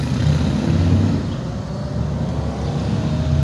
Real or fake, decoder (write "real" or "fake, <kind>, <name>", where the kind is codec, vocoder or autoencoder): real